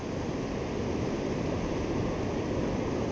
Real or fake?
real